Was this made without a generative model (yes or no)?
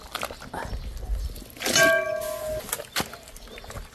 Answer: yes